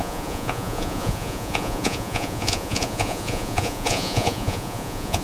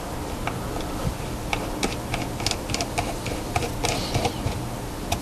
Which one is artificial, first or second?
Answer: first